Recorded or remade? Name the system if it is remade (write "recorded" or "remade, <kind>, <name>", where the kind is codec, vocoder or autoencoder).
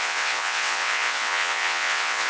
remade, vocoder, WaveNeXt